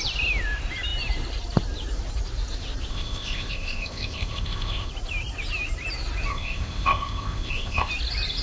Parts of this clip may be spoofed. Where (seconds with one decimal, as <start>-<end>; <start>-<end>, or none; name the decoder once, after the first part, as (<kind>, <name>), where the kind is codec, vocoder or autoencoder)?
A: 2.9-4.9 (codec, ZipCodec); 6.3-7.9